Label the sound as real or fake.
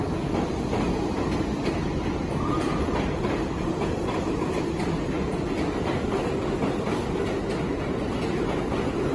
real